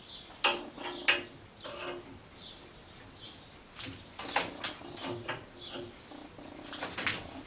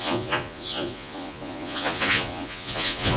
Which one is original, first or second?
first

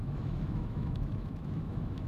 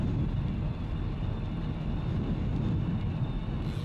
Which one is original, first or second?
second